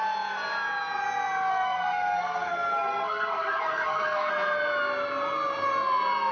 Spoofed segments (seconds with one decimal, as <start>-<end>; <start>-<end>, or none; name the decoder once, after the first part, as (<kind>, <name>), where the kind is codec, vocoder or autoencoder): 1.5-4.3 (codec, SNAC)